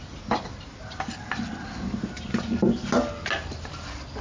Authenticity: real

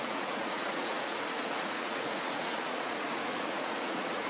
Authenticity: fake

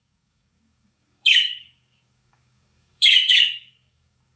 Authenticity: fake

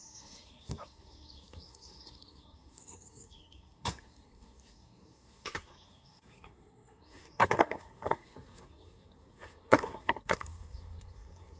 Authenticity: fake